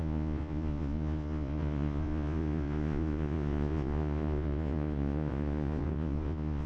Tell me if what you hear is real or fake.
fake